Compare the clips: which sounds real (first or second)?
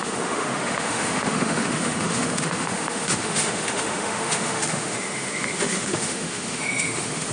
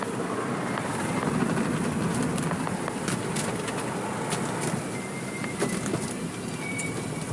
second